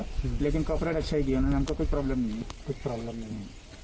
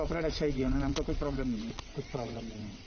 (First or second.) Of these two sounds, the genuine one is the first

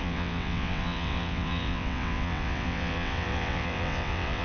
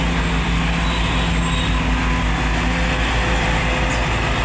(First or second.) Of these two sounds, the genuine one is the second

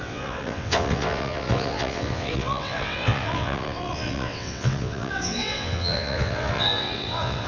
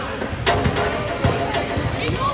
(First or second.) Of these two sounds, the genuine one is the second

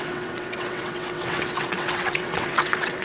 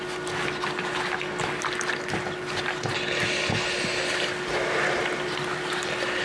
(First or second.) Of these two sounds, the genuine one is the second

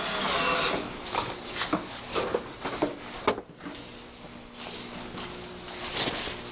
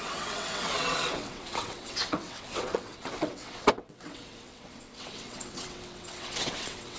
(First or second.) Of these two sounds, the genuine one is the first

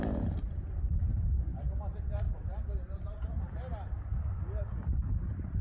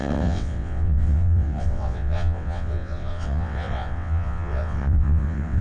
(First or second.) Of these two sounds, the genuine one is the first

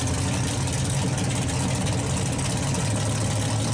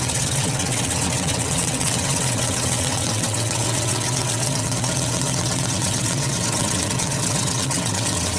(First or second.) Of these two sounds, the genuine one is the first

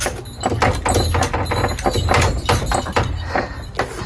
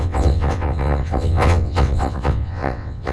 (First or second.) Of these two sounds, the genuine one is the first